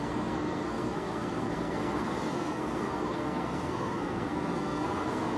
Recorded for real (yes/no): no